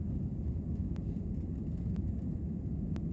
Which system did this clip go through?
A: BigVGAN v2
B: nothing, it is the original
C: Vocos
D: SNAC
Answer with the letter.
B